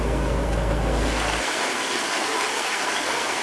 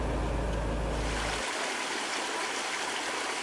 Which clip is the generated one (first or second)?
first